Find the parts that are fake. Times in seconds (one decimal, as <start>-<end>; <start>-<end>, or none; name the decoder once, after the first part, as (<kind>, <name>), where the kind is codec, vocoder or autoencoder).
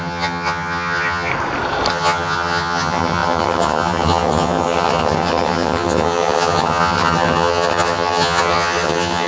0.0-1.3 (vocoder, HiFi-GAN); 1.9-9.3